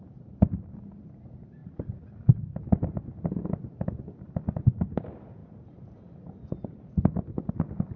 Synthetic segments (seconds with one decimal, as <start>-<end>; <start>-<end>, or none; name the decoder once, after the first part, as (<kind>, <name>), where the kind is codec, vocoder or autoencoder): none